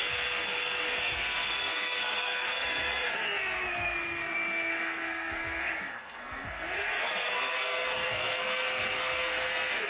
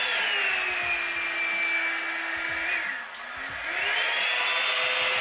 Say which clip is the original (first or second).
second